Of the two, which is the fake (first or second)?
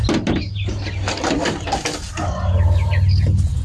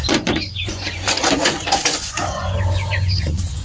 second